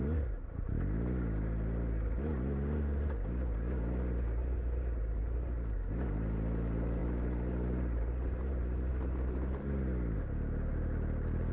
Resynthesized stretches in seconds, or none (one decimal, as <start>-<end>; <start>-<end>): none